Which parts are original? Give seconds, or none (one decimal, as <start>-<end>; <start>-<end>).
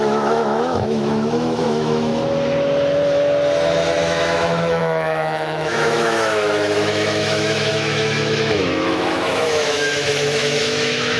2.1-4.0